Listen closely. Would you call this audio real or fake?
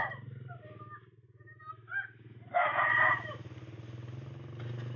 real